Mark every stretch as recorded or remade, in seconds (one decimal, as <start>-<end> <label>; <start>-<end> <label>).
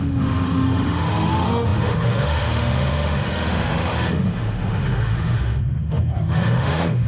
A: 0.0-7.1 remade